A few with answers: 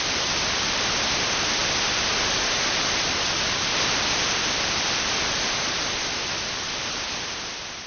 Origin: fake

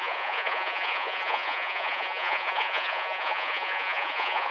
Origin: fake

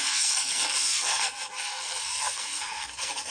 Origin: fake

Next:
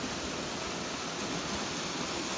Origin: real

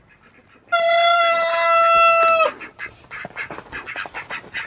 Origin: real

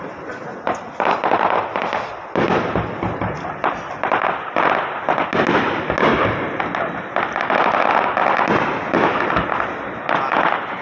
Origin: real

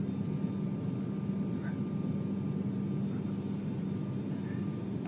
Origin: real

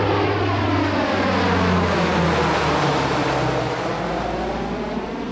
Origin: real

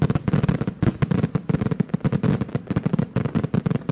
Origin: real